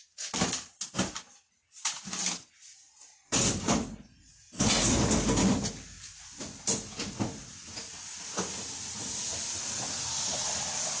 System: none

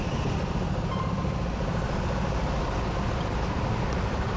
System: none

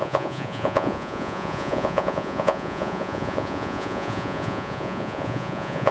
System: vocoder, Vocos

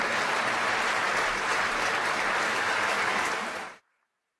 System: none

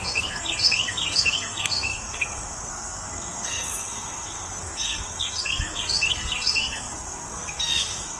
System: codec, SNAC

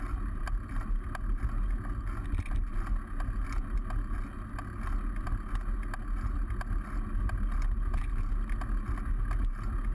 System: none